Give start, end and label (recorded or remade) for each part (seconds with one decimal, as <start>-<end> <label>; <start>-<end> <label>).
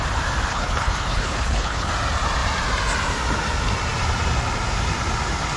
0.0-0.5 recorded; 0.5-1.9 remade; 1.9-5.6 recorded